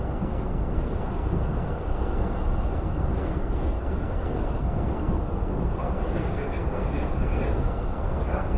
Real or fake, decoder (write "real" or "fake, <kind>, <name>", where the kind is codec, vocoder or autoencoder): fake, codec, SNAC